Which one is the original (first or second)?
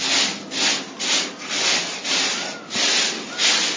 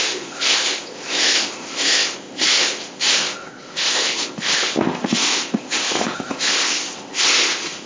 first